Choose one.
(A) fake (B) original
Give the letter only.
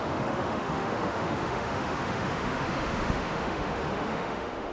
A